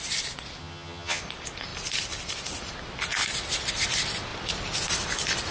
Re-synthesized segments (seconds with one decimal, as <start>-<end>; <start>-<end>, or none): 0.6-1.2